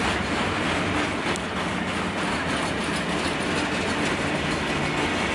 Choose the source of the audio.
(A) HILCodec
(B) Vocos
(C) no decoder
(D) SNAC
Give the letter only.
C